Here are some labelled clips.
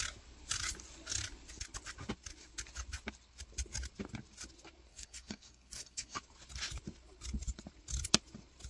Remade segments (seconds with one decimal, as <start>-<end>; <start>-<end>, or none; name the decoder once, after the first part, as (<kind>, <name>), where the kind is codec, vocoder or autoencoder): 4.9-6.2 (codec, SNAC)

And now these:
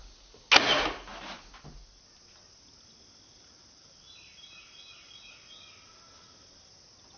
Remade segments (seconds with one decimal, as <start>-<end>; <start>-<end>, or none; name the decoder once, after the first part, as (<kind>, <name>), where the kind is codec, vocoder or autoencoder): none

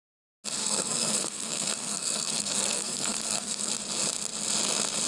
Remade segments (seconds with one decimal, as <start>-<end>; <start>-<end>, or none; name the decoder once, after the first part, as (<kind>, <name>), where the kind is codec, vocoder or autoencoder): 0.6-3.7 (codec, SNAC)